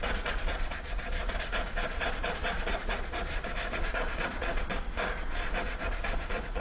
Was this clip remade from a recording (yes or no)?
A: yes